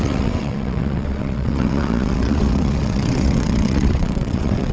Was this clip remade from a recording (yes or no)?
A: yes